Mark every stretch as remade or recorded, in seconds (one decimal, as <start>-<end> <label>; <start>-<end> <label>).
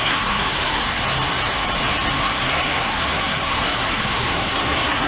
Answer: 0.0-1.0 remade; 1.0-2.2 recorded; 2.2-5.1 remade